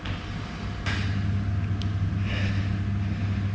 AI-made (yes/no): no